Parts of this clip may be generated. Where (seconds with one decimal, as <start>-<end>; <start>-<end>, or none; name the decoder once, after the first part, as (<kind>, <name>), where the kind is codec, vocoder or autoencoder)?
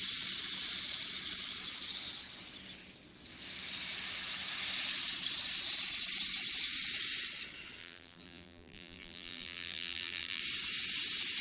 7.8-10.4 (vocoder, BigVGAN v2)